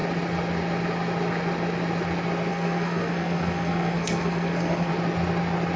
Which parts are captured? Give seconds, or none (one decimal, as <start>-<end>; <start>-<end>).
0.0-2.5; 4.9-5.8